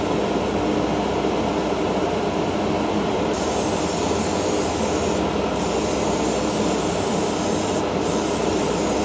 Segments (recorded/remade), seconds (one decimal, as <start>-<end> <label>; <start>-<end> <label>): 0.0-9.0 recorded